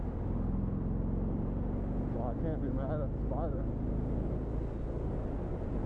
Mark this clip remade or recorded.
recorded